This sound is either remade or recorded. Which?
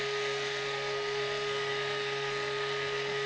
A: remade